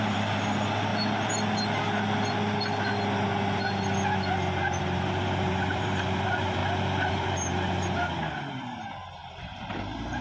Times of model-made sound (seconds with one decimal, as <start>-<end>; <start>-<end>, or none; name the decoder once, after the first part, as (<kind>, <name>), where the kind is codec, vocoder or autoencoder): 0.0-0.9 (vocoder, BigVGAN v2); 4.8-6.6; 7.1-10.2